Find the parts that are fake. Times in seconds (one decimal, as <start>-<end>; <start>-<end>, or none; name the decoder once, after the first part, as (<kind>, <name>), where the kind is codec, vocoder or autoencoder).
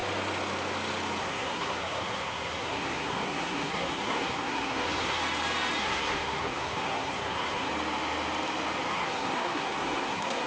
1.2-5.2 (codec, SNAC); 5.8-7.7; 8.9-10.5